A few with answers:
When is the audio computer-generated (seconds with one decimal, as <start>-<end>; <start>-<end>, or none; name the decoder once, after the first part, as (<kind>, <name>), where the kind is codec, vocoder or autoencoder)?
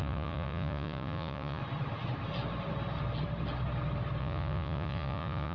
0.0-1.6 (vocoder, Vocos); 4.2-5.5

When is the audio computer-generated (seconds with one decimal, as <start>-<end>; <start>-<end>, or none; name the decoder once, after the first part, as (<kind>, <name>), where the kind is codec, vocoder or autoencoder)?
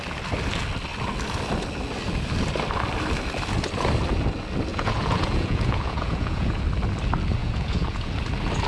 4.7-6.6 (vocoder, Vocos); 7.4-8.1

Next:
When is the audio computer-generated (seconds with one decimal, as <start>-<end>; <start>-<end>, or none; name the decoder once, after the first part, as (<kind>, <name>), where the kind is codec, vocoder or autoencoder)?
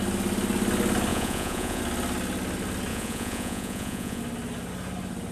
1.1-1.8 (vocoder, Vocos); 2.9-4.2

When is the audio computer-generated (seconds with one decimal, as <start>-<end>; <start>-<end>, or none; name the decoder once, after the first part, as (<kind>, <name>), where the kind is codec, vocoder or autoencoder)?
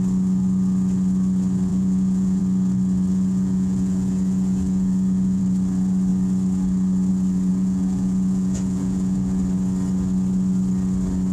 1.7-2.4 (vocoder, Vocos); 3.1-5.4; 7.5-9.4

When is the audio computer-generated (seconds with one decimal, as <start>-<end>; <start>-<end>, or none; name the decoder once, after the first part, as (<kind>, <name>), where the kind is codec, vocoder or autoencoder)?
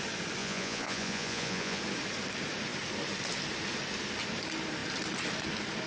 0.4-1.8 (vocoder, Vocos)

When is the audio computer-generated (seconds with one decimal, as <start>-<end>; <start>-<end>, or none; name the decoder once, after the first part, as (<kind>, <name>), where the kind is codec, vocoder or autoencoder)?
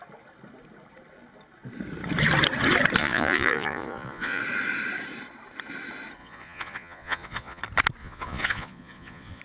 3.0-4.4 (vocoder, Vocos); 6.2-7.6; 8.0-9.4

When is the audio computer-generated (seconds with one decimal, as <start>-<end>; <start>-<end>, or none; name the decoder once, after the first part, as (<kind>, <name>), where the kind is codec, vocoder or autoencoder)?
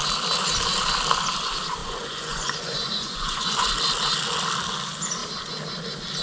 1.8-3.7 (vocoder, Vocos)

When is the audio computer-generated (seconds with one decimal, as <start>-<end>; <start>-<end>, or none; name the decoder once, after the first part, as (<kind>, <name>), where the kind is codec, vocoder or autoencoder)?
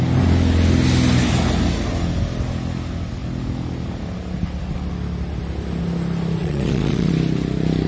6.4-7.1 (vocoder, Vocos)